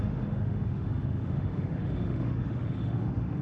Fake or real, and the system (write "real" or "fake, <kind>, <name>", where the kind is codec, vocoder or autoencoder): fake, autoencoder, DAC-VAE